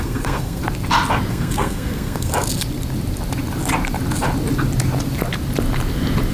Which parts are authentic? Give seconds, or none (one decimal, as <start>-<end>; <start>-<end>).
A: 0.6-1.3; 2.3-6.3